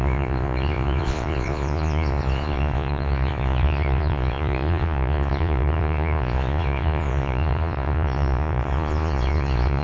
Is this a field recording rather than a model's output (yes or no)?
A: no